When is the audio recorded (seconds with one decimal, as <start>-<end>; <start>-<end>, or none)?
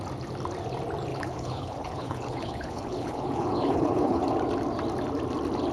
0.0-1.1; 4.2-5.7